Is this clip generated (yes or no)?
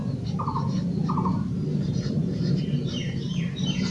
yes